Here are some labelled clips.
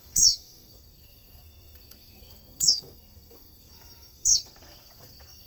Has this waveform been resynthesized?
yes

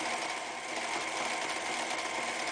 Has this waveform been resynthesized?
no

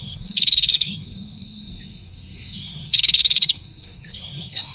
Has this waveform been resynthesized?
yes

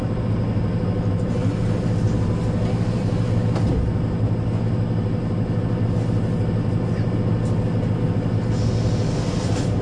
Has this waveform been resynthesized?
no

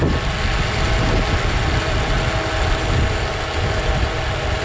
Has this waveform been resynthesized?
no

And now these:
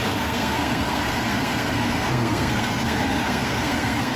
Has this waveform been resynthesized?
yes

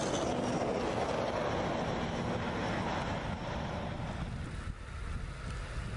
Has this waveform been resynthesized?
no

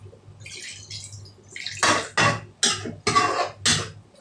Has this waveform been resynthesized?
no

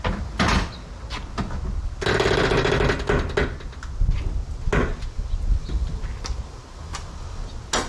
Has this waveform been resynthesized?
no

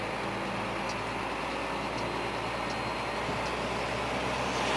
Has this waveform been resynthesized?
no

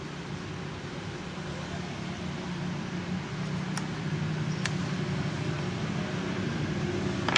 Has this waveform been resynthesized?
no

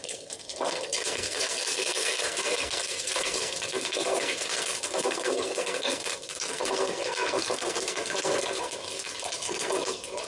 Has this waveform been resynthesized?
yes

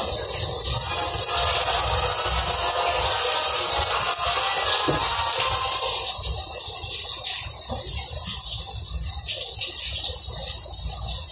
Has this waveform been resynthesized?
no